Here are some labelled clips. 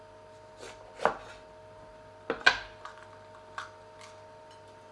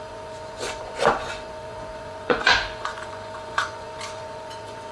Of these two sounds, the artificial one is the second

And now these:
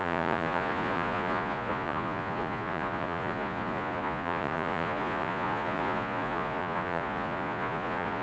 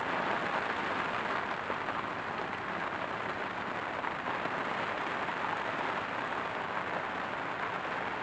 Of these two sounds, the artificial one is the first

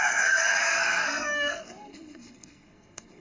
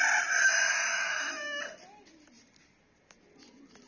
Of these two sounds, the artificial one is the first